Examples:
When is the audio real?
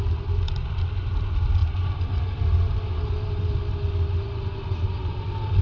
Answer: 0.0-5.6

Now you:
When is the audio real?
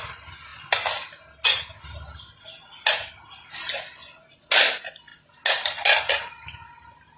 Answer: 0.0-7.2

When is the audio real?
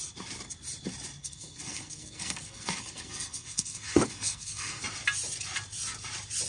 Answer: 0.0-1.2; 4.8-6.5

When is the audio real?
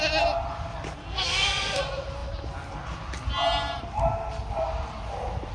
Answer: 0.0-1.0; 1.8-5.5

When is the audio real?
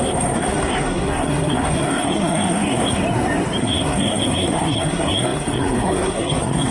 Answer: 3.0-3.6